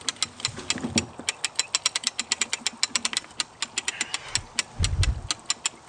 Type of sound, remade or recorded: recorded